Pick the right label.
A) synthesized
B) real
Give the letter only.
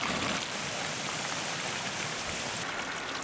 B